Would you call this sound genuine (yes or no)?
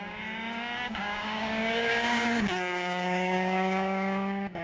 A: no